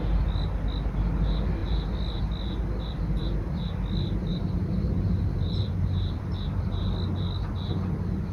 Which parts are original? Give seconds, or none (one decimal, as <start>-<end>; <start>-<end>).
0.0-4.3; 6.8-8.3